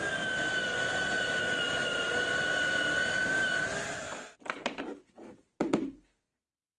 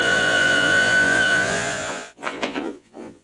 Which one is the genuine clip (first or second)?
first